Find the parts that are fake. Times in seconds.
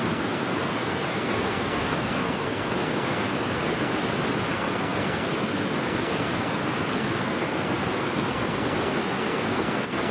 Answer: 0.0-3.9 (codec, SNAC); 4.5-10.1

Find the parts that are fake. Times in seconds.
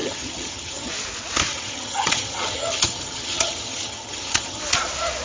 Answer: 0.0-0.9 (vocoder, HiFi-GAN); 1.5-4.6